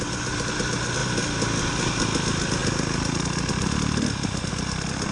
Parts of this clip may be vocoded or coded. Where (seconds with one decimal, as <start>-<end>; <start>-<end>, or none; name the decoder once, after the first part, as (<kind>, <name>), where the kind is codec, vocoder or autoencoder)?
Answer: 2.6-4.5 (vocoder, BigVGAN v2)